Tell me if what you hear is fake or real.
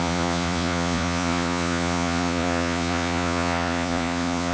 fake